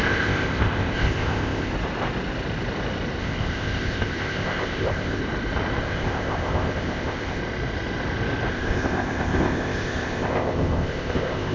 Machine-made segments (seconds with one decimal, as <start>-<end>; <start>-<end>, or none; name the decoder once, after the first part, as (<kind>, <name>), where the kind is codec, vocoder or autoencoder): 0.0-1.7 (codec, ZipCodec); 3.2-5.2; 5.8-7.4; 8.5-11.5